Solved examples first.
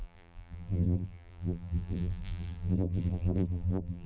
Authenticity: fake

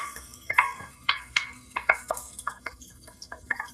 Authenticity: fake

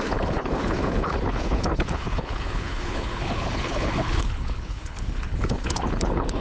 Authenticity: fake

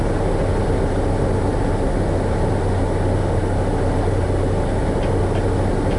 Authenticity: real